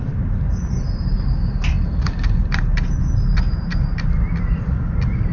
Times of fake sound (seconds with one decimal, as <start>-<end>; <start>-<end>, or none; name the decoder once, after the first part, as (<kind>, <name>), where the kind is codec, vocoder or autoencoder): none